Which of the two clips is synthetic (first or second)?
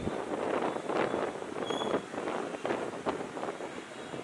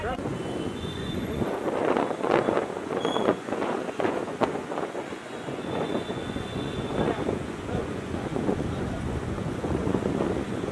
second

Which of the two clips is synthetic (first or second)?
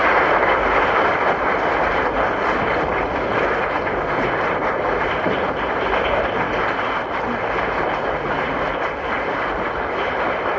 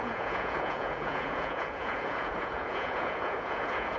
second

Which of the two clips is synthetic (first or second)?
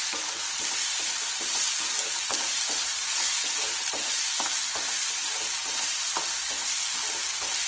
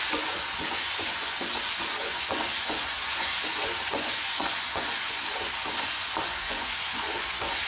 second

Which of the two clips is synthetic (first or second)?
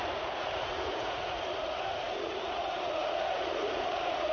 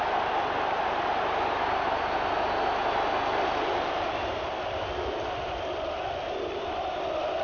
first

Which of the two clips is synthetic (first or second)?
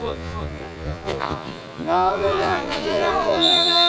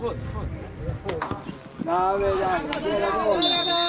first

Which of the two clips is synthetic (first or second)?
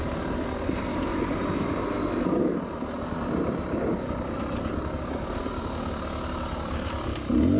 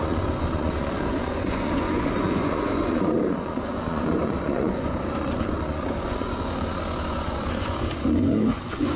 second